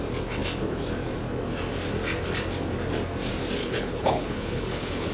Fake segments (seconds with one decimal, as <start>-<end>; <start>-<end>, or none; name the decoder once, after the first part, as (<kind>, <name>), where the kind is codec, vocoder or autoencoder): 3.6-5.1 (codec, HILCodec)